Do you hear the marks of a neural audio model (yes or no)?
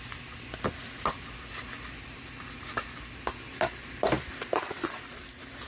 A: no